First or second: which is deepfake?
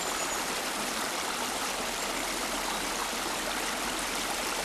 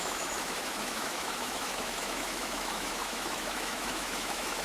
second